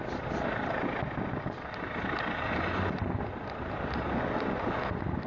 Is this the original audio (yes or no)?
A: yes